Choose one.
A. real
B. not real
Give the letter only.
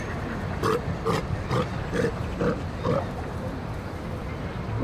A